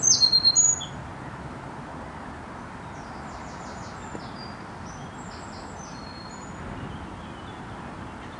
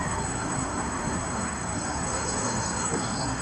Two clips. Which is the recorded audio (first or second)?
first